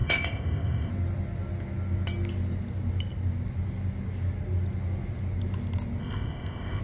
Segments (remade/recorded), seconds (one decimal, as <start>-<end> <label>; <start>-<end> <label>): 0.0-0.9 remade; 0.9-6.0 recorded; 6.0-6.8 remade